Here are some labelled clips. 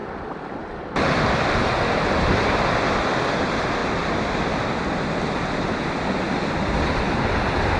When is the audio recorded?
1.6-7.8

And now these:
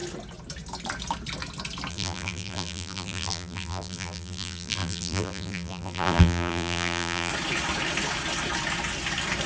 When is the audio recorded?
0.0-1.9; 7.3-9.5

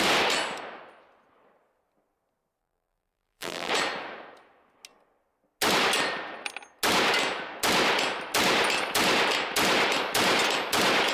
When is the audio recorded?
0.0-2.6; 3.7-11.1

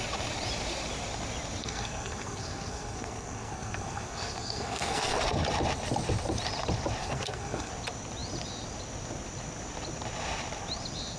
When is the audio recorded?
0.0-1.6; 5.2-7.0; 7.7-11.2

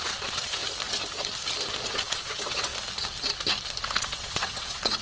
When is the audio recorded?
0.6-1.9; 2.7-4.0